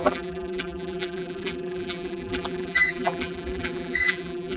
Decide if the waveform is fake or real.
fake